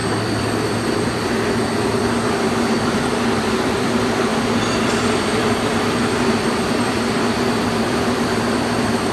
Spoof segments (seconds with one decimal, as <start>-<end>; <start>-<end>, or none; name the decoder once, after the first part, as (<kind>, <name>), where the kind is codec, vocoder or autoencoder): 0.0-9.1 (vocoder, BigVGAN v2)